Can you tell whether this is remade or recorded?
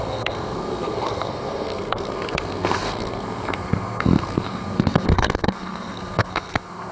remade